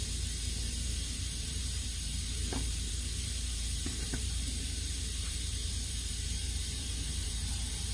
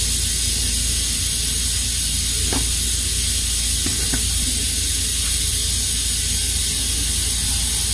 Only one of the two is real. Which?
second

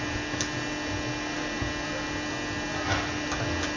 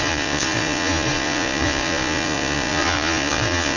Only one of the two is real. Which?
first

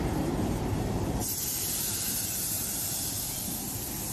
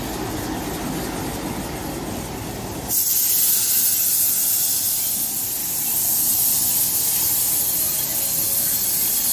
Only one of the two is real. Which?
second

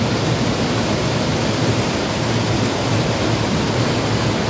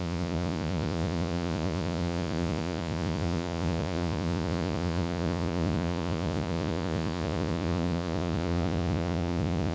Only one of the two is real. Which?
first